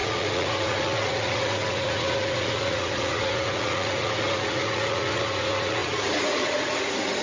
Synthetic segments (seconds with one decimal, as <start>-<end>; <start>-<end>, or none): 0.0-7.2